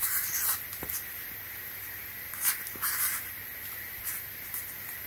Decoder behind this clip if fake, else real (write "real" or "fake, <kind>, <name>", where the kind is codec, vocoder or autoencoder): real